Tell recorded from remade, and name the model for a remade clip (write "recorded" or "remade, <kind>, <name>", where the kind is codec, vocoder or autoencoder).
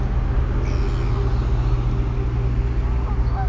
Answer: recorded